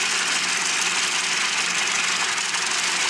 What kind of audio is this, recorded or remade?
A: recorded